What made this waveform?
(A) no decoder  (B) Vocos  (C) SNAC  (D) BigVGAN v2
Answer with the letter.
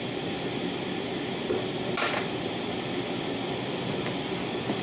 A